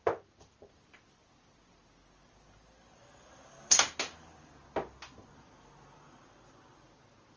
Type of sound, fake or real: real